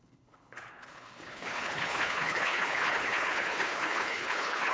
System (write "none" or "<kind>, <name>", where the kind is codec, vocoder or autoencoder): codec, HILCodec